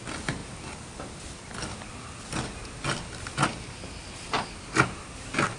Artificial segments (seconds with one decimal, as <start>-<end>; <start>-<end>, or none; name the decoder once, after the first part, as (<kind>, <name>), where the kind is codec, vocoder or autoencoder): none